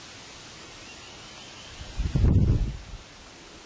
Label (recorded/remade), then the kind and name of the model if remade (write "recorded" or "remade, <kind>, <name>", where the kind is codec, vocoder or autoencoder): recorded